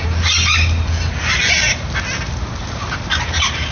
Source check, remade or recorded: recorded